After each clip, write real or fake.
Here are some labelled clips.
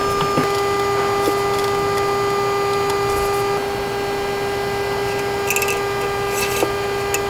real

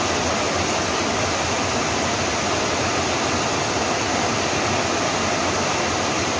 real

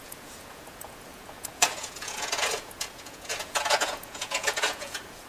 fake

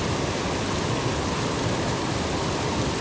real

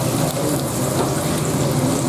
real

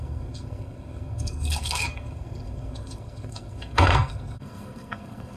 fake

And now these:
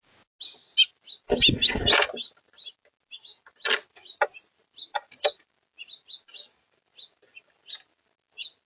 real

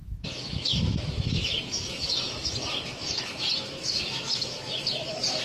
fake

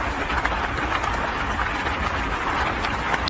real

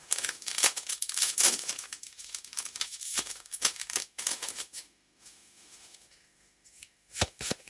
fake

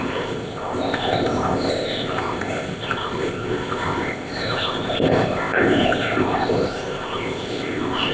fake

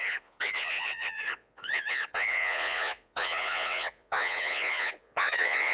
fake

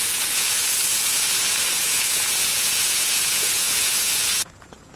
fake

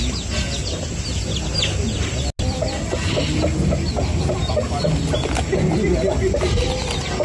real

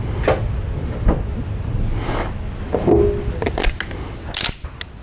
real